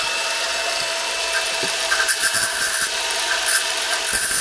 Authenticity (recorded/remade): recorded